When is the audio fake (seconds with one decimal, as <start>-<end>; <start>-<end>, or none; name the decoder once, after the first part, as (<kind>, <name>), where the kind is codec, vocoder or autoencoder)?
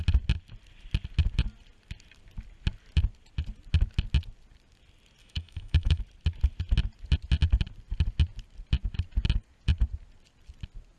5.2-6.0 (autoencoder, DAC-VAE)